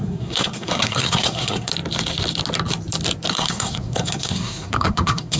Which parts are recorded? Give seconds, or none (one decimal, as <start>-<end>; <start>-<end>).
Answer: 1.7-3.3